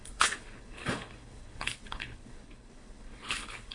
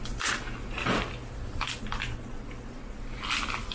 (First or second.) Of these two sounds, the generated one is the first